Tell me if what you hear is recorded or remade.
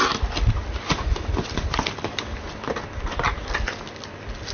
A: recorded